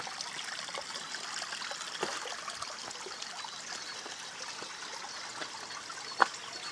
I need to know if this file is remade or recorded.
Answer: recorded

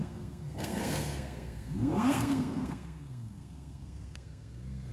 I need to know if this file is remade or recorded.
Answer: remade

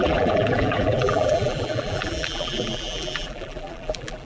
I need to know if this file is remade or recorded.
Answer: remade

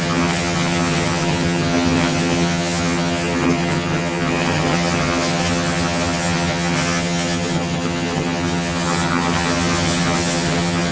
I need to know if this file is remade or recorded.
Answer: remade